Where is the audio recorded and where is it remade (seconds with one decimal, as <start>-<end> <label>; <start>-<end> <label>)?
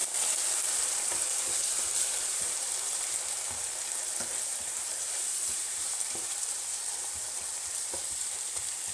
0.0-3.2 remade; 3.2-4.5 recorded; 4.5-7.4 remade; 7.4-8.9 recorded